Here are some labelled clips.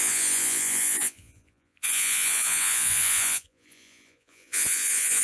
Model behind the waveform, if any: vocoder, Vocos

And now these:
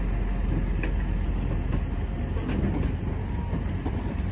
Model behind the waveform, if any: none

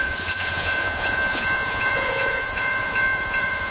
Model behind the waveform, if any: vocoder, Vocos